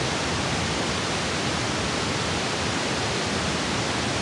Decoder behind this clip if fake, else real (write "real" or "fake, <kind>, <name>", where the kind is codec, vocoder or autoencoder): real